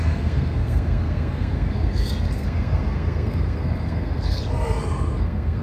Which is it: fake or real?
fake